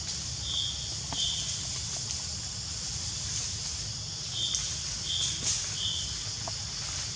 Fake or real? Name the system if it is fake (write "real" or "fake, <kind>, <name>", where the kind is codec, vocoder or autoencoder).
real